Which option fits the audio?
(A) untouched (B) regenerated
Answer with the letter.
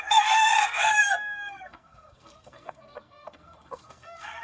B